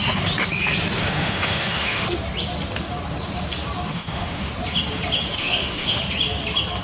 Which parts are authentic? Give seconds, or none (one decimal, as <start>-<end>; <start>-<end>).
0.0-1.0; 2.0-3.9; 4.5-5.4; 6.0-6.8